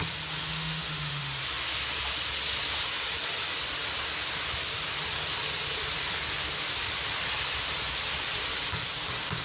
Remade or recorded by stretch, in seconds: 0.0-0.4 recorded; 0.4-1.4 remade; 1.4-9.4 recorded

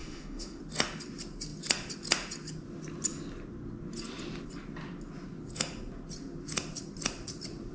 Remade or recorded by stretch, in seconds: 0.0-0.6 remade; 0.6-7.7 recorded

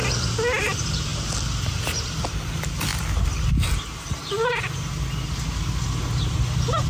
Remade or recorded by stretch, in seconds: 0.0-6.9 recorded

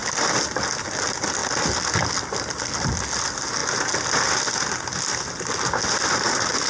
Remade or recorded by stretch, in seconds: 0.0-6.7 recorded

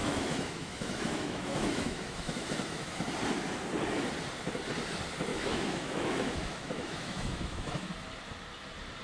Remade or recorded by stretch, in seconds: 0.0-3.0 remade; 3.0-5.3 recorded; 5.3-7.9 remade; 7.9-9.0 recorded